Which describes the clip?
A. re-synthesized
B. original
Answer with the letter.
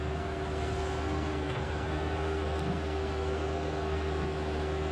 A